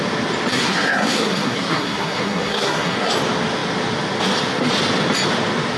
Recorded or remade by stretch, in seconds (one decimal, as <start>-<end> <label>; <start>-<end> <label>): 0.0-0.5 recorded; 0.5-3.1 remade; 3.1-5.8 recorded